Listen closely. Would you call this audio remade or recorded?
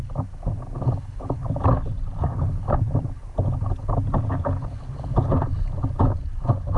recorded